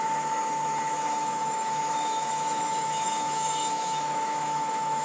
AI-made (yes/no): yes